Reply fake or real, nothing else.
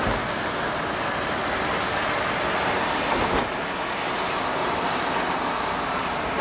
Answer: real